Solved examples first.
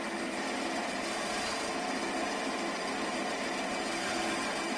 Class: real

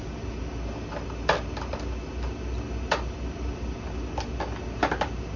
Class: real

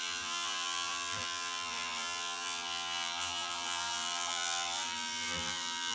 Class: fake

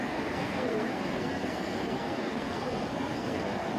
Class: fake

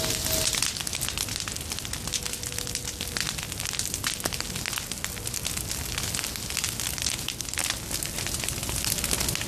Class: real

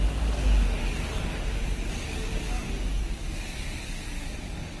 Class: fake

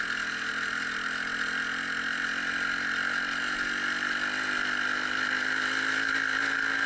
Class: real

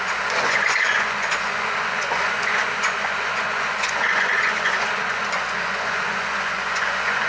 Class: fake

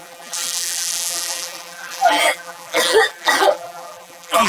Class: fake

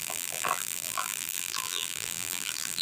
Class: fake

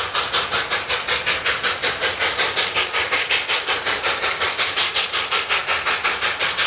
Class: real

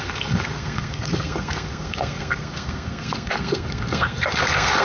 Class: fake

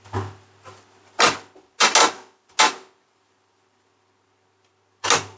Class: real